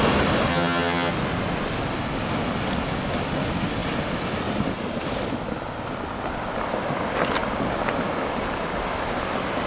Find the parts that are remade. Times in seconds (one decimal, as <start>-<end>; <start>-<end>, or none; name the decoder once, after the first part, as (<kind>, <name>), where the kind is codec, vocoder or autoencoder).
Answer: 0.5-1.1 (vocoder, HiFi-GAN)